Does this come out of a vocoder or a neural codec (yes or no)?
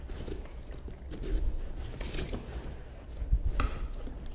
no